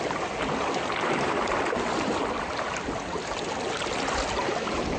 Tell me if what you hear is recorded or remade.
recorded